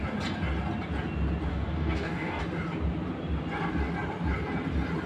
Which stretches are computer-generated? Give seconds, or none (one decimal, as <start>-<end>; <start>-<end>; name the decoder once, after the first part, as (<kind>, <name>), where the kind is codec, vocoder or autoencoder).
1.5-2.4 (codec, DAC)